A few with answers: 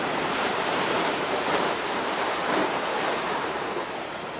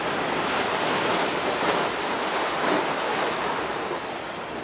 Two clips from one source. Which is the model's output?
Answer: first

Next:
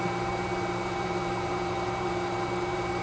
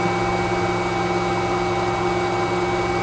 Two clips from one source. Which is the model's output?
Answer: first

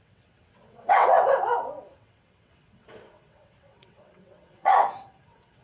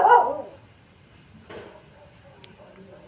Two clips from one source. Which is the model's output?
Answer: first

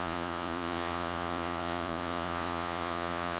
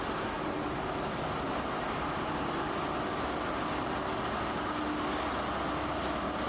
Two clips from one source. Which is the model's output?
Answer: first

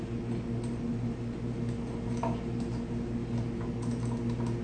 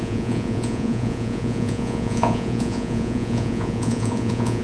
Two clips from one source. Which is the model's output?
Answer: second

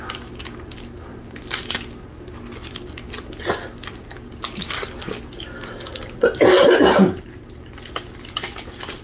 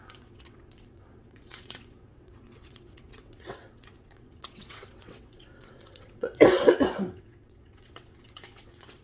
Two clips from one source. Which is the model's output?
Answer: second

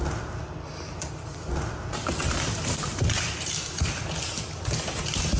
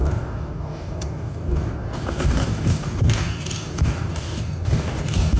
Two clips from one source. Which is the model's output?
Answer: second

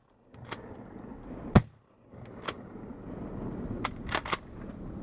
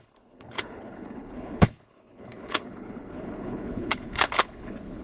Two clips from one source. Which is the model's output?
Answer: second